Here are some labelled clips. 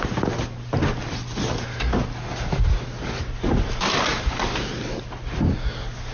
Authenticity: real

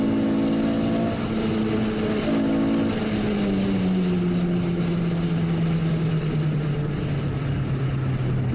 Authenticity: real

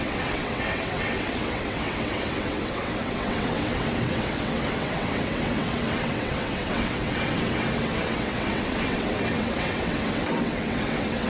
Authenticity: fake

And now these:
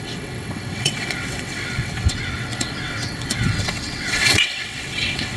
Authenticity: fake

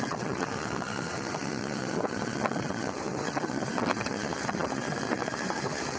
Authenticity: fake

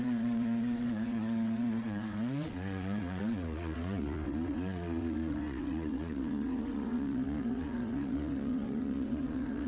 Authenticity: fake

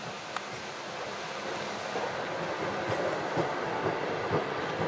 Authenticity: real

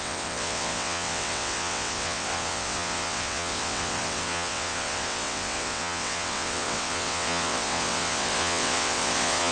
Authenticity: fake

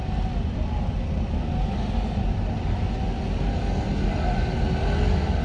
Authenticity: real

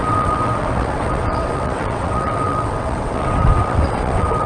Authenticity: fake